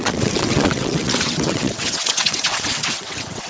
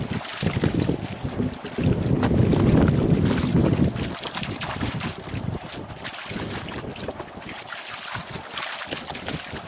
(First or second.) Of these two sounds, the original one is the second